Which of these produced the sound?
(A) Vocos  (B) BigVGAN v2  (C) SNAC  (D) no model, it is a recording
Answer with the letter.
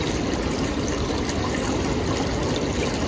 D